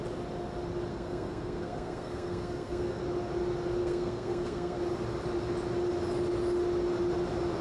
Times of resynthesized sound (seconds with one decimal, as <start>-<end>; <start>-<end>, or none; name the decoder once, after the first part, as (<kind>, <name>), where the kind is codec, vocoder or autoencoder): 0.9-3.0 (codec, SNAC); 3.8-4.8